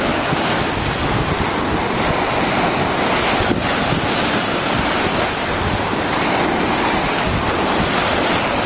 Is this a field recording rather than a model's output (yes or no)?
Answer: yes